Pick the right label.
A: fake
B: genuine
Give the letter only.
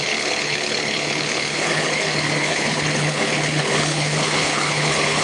A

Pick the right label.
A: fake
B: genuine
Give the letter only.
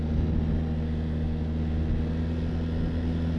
B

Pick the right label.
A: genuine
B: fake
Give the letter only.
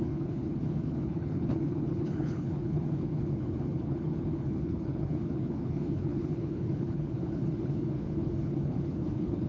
B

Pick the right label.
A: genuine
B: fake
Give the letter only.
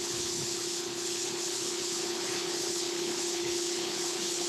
B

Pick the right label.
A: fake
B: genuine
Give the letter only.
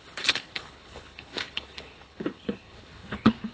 A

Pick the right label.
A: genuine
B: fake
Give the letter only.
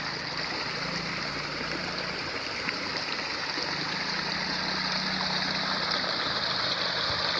A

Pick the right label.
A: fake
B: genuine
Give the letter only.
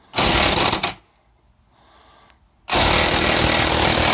B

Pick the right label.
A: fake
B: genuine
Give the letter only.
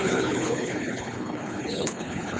A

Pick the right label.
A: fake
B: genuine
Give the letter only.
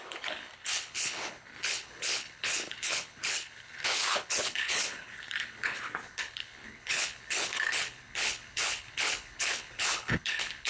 A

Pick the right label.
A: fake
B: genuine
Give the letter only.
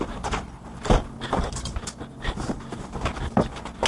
B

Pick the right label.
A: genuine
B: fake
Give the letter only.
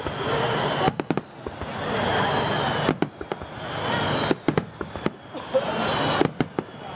A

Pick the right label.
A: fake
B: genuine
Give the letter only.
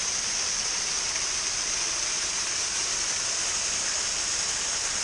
B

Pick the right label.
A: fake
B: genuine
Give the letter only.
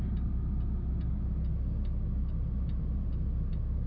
B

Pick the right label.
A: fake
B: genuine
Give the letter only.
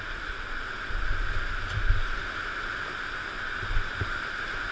B